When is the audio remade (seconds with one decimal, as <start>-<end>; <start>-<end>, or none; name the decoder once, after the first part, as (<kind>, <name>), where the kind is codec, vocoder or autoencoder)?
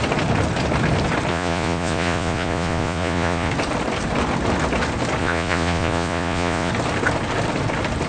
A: 1.3-3.5 (vocoder, Vocos); 5.2-6.7